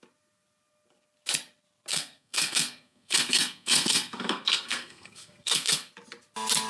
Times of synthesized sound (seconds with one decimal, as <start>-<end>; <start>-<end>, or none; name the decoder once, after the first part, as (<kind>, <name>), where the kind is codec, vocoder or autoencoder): 1.9-5.9 (codec, SNAC)

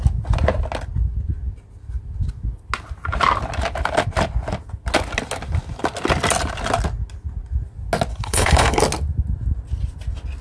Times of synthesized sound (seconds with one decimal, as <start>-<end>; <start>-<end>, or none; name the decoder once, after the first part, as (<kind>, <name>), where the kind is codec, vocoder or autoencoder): 8.1-8.8 (codec, HILCodec)

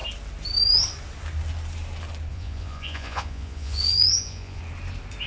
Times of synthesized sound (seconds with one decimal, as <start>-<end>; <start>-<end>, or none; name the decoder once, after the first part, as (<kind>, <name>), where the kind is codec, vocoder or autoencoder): 2.3-4.6 (vocoder, Vocos)

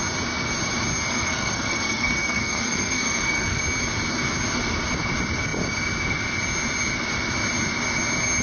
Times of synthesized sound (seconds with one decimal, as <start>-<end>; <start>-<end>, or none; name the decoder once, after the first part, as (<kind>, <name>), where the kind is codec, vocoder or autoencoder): 1.1-3.6 (codec, SNAC)

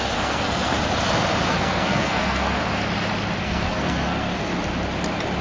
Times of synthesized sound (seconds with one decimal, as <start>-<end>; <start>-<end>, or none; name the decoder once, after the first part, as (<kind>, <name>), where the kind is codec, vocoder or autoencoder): 0.0-0.7 (codec, SNAC); 1.5-2.6; 3.4-4.5

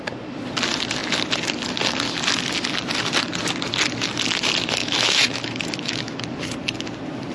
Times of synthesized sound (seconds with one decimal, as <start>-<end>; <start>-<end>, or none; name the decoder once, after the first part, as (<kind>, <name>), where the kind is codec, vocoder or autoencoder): 4.8-6.2 (autoencoder, DAC-VAE)

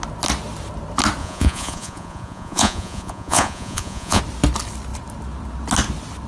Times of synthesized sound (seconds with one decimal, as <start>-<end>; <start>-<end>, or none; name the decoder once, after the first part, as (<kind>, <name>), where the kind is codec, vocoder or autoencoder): 1.2-4.2 (vocoder, Vocos)